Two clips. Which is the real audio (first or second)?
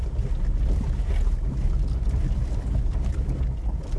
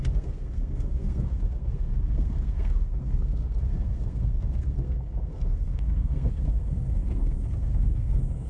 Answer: first